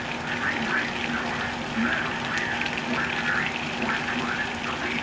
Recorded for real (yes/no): yes